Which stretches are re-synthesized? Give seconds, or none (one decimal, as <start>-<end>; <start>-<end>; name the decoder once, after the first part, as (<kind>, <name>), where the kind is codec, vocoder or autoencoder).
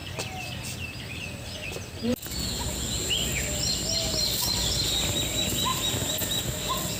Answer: none